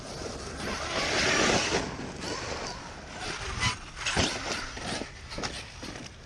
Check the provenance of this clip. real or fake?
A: real